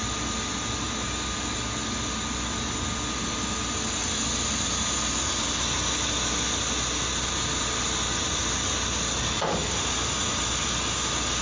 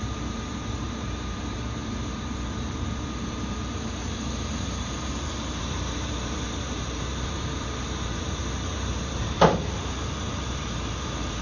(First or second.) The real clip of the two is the first